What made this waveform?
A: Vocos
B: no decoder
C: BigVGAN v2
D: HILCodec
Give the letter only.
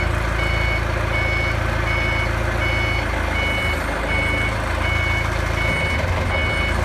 B